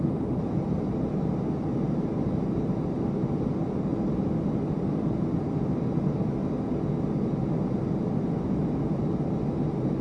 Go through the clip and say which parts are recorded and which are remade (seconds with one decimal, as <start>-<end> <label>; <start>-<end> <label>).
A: 0.0-10.0 recorded